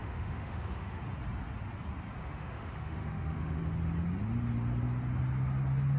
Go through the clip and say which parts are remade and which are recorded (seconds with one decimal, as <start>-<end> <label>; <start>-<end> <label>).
0.0-1.0 remade; 1.0-2.2 recorded; 2.2-3.6 remade; 3.6-6.0 recorded